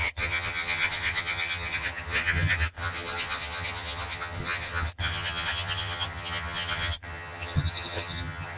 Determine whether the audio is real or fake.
fake